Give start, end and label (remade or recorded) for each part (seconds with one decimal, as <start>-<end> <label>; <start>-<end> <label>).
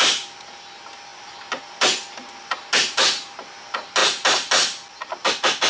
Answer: 0.0-5.7 recorded